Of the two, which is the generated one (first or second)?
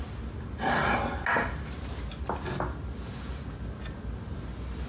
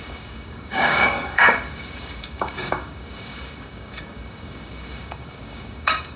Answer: second